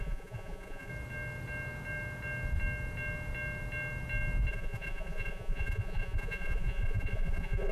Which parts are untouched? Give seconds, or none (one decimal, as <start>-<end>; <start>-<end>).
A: 0.9-4.5

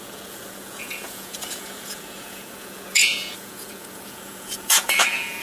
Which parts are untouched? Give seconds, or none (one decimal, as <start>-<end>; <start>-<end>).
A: none